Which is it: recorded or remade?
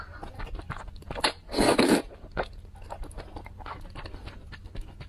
recorded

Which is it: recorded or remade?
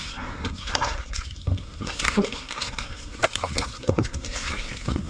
remade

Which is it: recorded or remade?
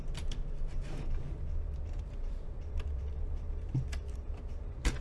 remade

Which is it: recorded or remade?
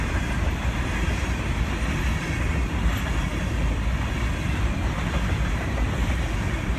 recorded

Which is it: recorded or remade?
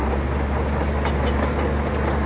recorded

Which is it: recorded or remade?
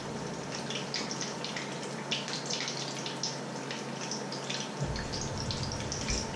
recorded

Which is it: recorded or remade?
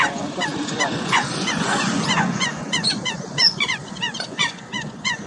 remade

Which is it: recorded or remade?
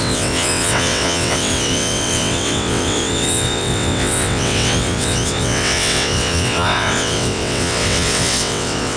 remade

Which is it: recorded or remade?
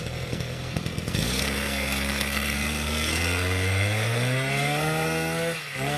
remade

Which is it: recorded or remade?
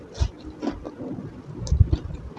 recorded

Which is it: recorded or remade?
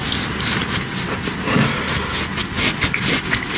recorded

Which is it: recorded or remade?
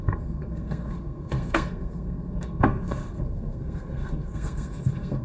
remade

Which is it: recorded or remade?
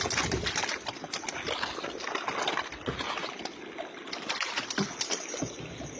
recorded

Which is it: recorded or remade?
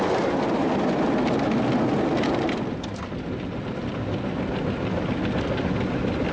recorded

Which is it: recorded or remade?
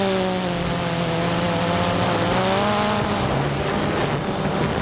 recorded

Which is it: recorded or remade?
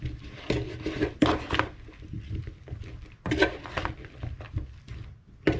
recorded